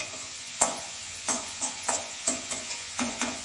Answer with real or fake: fake